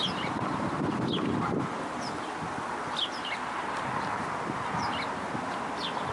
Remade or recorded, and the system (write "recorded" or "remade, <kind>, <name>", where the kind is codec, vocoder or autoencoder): recorded